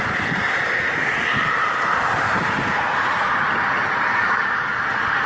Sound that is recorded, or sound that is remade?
recorded